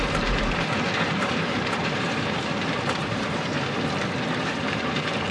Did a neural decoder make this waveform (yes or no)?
yes